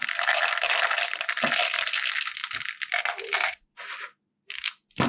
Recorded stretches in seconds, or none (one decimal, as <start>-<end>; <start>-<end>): 0.0-5.1